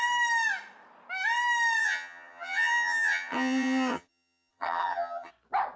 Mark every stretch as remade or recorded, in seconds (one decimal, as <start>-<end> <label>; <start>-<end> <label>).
0.0-1.8 recorded; 1.8-5.3 remade; 5.3-5.8 recorded